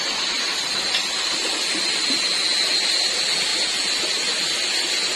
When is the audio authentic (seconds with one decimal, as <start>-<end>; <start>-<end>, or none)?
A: 0.0-5.2